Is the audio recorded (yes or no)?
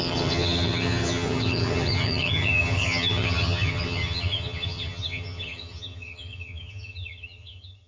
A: no